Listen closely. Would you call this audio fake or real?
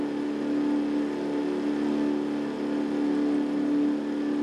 real